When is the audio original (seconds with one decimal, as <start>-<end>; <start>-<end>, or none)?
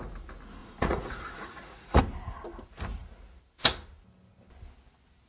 0.0-0.6; 2.0-5.3